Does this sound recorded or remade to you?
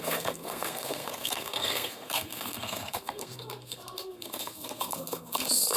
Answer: remade